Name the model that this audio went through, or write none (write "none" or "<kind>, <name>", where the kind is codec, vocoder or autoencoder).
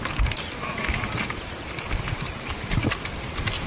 none